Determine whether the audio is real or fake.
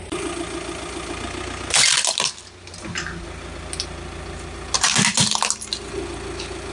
real